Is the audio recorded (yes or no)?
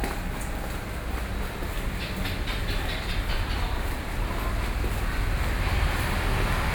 yes